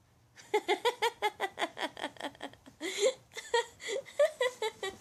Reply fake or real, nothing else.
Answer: real